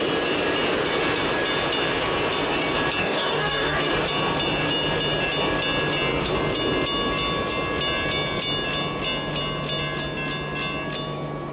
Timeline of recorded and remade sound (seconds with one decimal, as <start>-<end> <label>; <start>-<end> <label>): 0.0-3.0 recorded; 3.0-3.9 remade; 3.9-11.5 recorded